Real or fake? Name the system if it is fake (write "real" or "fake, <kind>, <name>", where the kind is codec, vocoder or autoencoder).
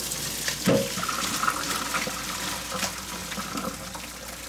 real